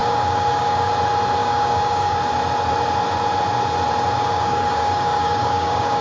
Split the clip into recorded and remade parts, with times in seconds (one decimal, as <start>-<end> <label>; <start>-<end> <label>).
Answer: 0.0-0.9 remade; 0.9-1.4 recorded; 1.4-2.2 remade; 2.2-4.2 recorded; 4.2-6.0 remade